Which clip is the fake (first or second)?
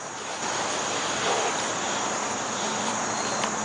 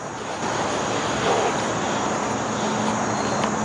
first